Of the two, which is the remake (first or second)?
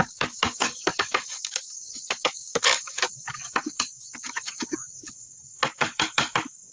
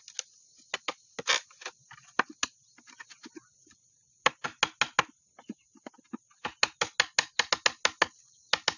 first